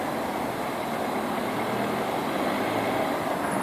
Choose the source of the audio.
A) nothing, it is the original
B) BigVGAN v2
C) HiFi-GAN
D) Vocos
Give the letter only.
A